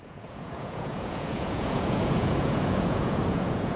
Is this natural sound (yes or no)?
no